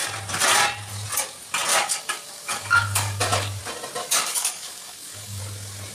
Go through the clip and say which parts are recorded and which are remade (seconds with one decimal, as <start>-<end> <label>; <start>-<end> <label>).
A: 0.0-1.7 recorded; 1.7-3.6 remade; 3.6-4.0 recorded; 4.0-5.4 remade; 5.4-5.9 recorded